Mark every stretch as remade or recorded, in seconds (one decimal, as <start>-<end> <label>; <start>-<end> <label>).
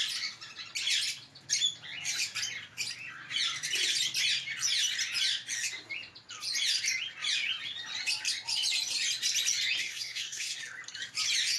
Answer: 0.0-9.8 recorded; 9.8-10.6 remade; 10.6-11.6 recorded